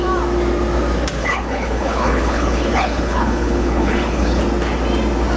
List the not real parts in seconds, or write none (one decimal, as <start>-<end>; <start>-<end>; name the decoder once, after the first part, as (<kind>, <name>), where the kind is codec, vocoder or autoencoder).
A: 1.2-4.4 (codec, HILCodec)